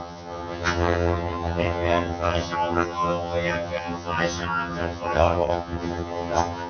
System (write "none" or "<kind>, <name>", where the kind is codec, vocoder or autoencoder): vocoder, HiFi-GAN